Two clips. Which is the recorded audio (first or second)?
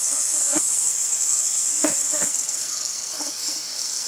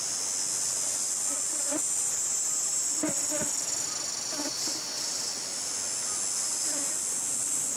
second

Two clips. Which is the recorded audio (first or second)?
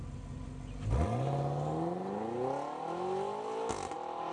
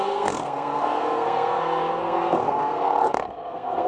first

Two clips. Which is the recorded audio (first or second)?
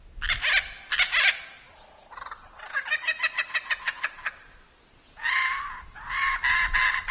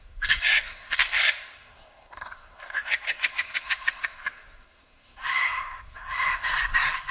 first